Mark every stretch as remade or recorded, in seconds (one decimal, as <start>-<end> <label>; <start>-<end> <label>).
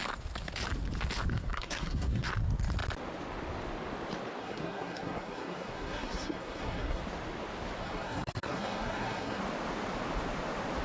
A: 0.0-1.3 recorded; 1.3-2.3 remade; 2.3-4.4 recorded; 4.4-7.0 remade; 7.0-7.8 recorded; 7.8-9.4 remade; 9.4-10.8 recorded